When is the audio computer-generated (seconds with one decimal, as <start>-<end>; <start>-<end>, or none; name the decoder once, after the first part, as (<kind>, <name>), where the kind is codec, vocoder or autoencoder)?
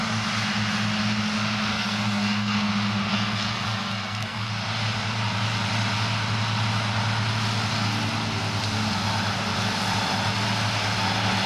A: 1.7-2.7 (codec, SNAC); 3.1-4.5